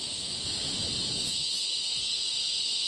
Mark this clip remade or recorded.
remade